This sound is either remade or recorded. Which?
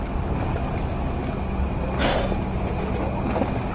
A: recorded